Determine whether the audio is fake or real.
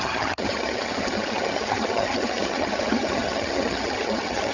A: fake